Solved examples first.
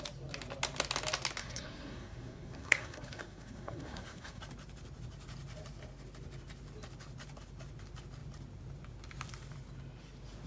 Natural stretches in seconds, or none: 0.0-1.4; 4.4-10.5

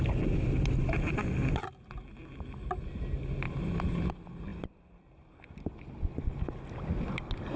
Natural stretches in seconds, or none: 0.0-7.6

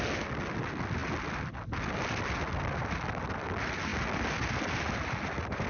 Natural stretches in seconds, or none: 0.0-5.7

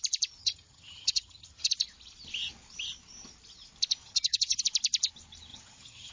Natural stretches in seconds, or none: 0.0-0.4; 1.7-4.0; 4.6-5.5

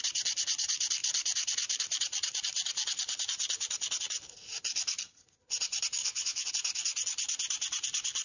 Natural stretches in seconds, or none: 0.0-6.0; 6.5-8.2